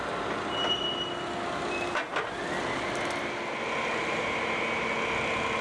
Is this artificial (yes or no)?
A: no